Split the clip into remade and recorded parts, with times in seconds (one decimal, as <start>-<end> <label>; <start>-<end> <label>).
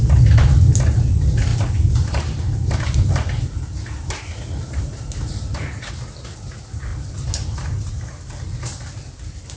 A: 0.0-1.5 recorded; 1.5-5.9 remade; 5.9-6.9 recorded; 6.9-7.9 remade; 7.9-9.6 recorded